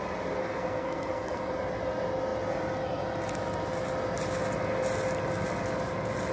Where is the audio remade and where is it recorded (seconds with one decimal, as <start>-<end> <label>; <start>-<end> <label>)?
0.0-0.4 recorded; 0.4-1.5 remade; 1.5-6.3 recorded